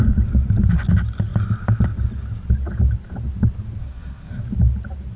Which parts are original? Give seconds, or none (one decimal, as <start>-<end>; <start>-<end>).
0.0-3.8; 4.4-5.2